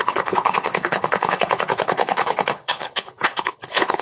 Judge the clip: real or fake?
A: fake